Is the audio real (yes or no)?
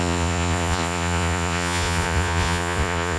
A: no